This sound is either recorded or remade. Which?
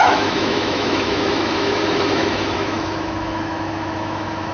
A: remade